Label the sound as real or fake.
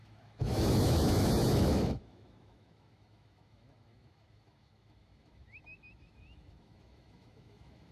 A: fake